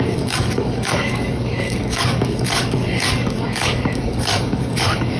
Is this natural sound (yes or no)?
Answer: no